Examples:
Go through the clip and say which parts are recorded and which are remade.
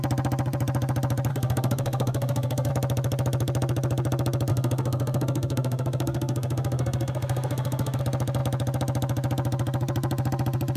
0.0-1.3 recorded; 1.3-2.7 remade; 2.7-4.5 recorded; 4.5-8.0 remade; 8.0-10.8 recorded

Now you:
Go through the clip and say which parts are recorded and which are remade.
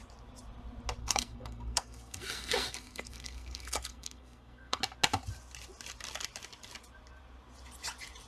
0.0-1.0 recorded; 1.0-4.8 remade; 4.8-8.3 recorded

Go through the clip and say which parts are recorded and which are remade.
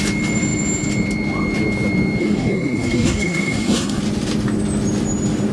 0.0-2.2 recorded; 2.2-4.0 remade; 4.0-5.5 recorded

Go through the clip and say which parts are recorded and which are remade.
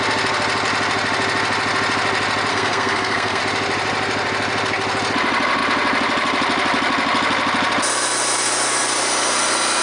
0.0-2.5 recorded; 2.5-3.4 remade; 3.4-9.8 recorded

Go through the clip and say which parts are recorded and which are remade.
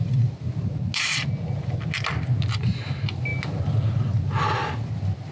0.0-5.3 recorded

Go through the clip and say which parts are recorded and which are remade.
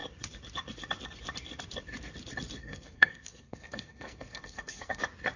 0.0-2.6 recorded; 2.6-5.0 remade; 5.0-5.4 recorded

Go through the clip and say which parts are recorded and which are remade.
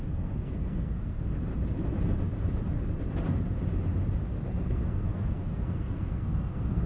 0.0-1.5 remade; 1.5-4.6 recorded; 4.6-6.9 remade